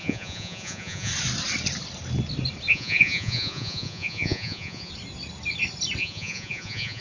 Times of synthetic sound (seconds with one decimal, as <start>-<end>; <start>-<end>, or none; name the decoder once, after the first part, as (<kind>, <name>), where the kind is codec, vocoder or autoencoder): 0.0-1.1 (vocoder, Vocos); 2.7-4.9; 6.0-7.0